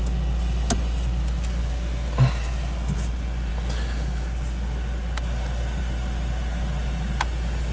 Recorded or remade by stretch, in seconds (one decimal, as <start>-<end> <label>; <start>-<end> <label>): 0.0-7.7 recorded